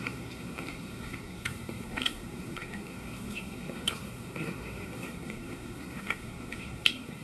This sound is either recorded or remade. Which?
remade